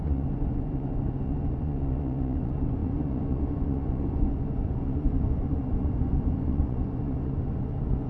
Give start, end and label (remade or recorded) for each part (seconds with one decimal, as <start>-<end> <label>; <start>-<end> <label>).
0.0-8.1 remade